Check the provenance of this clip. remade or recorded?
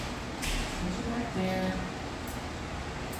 recorded